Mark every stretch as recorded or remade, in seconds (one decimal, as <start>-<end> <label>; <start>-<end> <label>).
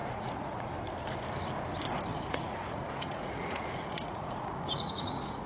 0.0-0.7 remade; 0.7-2.1 recorded; 2.1-5.5 remade